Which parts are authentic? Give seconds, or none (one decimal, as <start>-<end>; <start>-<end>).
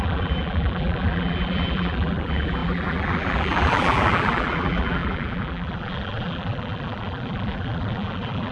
none